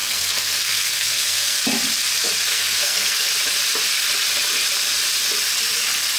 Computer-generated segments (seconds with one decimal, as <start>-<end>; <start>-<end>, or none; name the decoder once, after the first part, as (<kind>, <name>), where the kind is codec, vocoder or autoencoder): 0.0-1.6 (codec, SNAC); 2.5-3.3